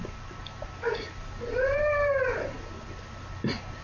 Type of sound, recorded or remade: recorded